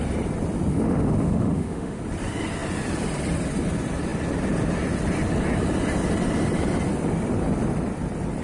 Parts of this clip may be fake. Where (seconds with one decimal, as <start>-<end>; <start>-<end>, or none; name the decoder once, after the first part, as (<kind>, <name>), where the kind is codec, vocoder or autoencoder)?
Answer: 0.7-2.0 (autoencoder, DAC-VAE)